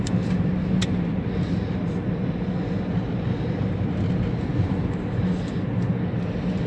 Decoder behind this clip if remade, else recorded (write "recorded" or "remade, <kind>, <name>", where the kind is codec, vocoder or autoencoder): recorded